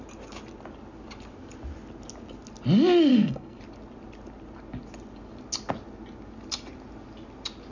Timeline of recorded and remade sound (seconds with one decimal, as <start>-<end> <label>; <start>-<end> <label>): 0.0-3.1 recorded; 3.1-3.6 remade; 3.6-7.7 recorded